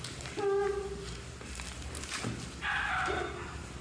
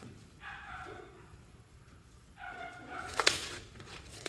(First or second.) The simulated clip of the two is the second